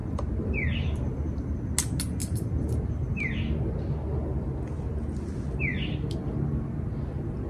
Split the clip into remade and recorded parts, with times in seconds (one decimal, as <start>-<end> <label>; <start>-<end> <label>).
0.0-1.5 remade; 1.5-2.2 recorded; 2.2-3.4 remade; 3.4-7.5 recorded